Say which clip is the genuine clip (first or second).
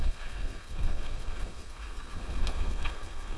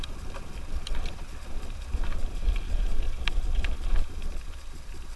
second